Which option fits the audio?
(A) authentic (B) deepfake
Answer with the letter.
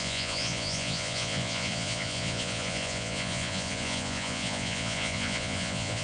B